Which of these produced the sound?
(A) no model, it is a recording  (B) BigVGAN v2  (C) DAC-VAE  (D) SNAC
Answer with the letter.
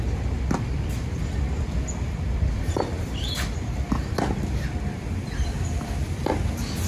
A